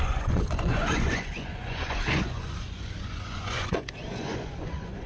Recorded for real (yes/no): no